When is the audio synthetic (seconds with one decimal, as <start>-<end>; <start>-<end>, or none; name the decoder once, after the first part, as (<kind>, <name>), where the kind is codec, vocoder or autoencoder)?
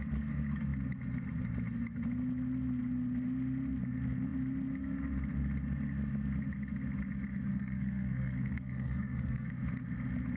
7.5-9.5 (codec, SNAC)